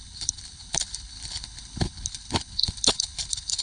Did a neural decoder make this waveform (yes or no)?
yes